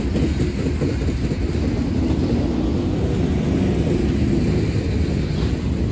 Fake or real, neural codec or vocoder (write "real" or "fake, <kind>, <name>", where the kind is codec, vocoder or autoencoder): real